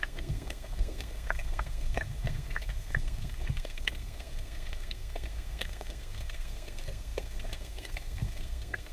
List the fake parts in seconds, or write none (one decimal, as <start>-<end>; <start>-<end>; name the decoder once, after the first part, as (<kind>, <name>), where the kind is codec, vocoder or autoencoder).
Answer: 0.0-8.9 (codec, SNAC)